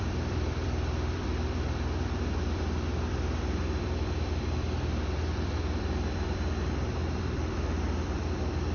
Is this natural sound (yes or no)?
no